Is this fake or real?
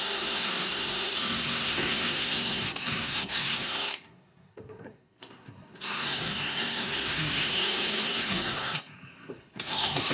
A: fake